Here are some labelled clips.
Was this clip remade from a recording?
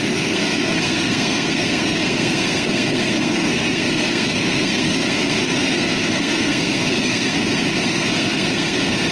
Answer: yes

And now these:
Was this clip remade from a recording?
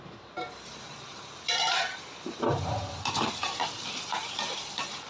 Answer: yes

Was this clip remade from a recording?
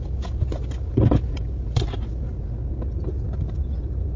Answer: no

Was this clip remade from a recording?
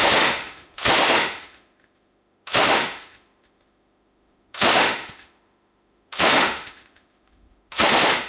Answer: yes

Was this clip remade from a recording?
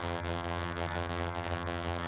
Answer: yes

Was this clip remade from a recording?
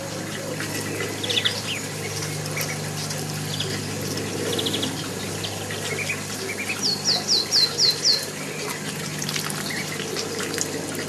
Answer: no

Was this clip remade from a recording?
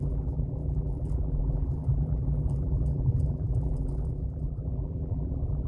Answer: yes